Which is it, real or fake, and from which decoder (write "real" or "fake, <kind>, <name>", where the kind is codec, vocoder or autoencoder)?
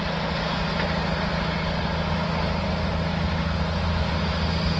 real